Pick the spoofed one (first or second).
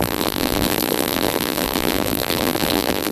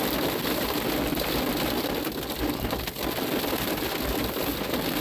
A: first